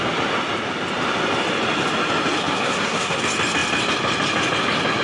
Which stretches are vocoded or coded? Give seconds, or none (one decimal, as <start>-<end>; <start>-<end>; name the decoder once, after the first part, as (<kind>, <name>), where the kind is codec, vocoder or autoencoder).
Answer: 2.4-3.2 (codec, SNAC)